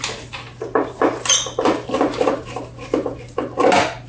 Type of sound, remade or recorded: recorded